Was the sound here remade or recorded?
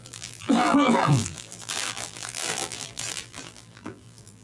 remade